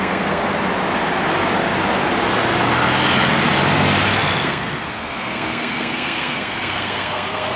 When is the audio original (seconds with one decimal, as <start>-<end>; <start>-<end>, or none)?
0.4-4.4